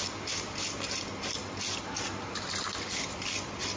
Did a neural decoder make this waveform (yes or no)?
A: no